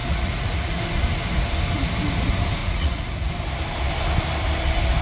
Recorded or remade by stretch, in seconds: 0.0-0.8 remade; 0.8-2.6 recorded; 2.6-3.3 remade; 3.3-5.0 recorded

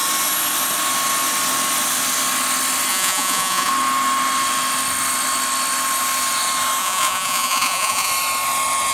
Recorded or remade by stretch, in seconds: 0.0-2.9 recorded; 2.9-3.7 remade; 3.7-6.8 recorded; 6.8-8.1 remade; 8.1-8.9 recorded

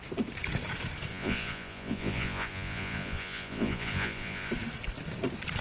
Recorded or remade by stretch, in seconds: 0.0-1.1 recorded; 1.1-4.5 remade; 4.5-5.6 recorded